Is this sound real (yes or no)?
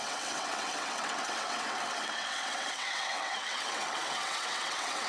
no